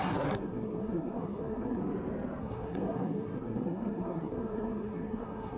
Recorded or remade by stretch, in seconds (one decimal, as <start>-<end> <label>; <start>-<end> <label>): 0.0-1.8 remade; 1.8-2.4 recorded; 2.4-5.6 remade